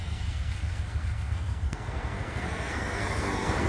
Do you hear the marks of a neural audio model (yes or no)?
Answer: yes